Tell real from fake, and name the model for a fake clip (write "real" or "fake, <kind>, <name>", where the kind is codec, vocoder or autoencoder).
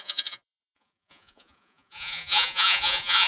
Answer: fake, vocoder, Vocos